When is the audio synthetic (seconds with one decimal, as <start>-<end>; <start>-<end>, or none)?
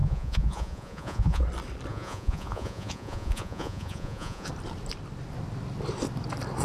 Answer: 0.0-1.4; 1.9-4.5